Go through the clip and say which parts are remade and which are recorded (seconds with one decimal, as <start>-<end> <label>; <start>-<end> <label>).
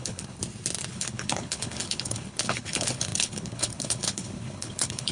0.0-0.4 remade; 0.4-0.9 recorded; 0.9-5.1 remade